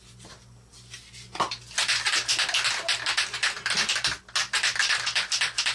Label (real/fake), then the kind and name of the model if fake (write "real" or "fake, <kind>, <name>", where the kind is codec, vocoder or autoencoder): real